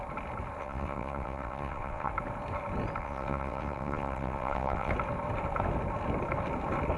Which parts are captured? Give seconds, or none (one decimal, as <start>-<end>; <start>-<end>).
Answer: 0.0-0.6; 2.1-3.0; 4.9-7.0